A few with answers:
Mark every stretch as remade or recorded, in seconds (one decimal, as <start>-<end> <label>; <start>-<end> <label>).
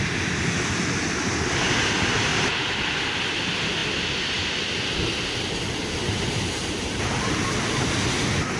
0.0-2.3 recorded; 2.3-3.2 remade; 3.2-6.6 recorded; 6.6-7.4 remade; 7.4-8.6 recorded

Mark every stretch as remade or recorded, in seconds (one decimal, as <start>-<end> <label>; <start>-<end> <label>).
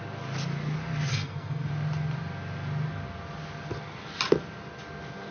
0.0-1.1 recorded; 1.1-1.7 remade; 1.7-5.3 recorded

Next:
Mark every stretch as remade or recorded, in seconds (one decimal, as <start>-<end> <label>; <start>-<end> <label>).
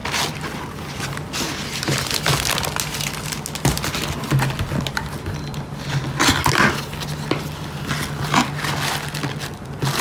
0.0-10.0 recorded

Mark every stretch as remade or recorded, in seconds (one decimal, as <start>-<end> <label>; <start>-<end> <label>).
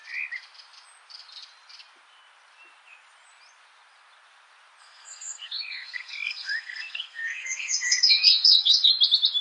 0.0-4.8 recorded; 4.8-8.9 remade; 8.9-9.4 recorded